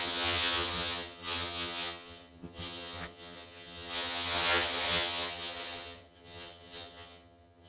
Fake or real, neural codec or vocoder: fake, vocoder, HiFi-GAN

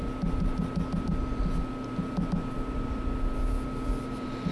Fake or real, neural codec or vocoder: real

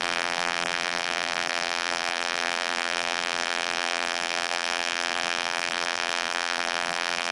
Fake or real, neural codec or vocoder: fake, vocoder, BigVGAN v2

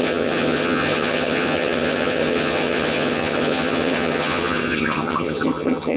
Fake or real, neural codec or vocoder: fake, vocoder, HiFi-GAN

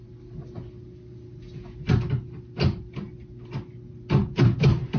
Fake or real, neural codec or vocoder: real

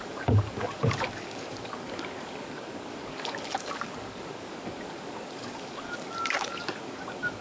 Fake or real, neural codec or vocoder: fake, codec, DAC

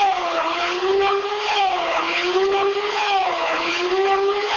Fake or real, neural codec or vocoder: fake, codec, HILCodec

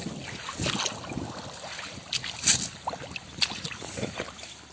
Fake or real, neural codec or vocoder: real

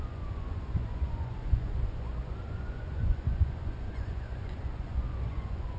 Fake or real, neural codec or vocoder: fake, vocoder, Vocos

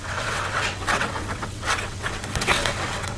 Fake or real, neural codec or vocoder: fake, vocoder, WaveNeXt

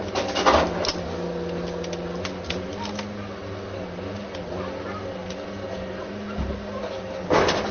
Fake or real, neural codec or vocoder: real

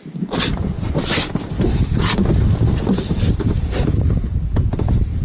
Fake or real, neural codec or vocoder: fake, vocoder, BigVGAN v2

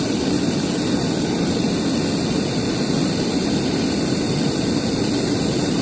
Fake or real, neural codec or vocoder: real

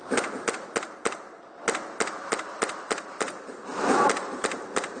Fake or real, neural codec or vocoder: real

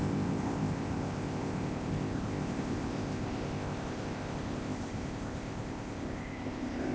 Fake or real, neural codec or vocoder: fake, codec, ZipCodec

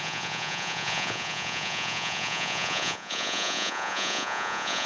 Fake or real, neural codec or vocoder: fake, vocoder, Vocos